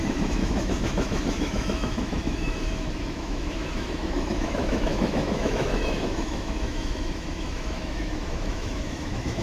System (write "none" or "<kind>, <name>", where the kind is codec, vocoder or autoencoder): autoencoder, DAC-VAE